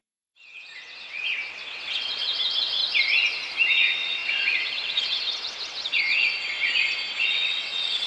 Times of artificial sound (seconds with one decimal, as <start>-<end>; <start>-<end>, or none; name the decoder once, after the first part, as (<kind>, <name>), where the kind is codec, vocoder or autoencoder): 0.0-2.8 (vocoder, WaveNeXt); 3.7-8.1